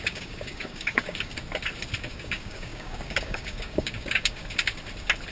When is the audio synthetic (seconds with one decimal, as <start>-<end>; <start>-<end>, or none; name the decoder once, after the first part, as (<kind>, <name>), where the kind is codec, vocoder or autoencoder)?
0.0-1.3 (codec, DAC); 2.0-4.4